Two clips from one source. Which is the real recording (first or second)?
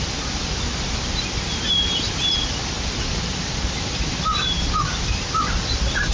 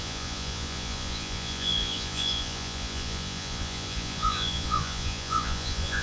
first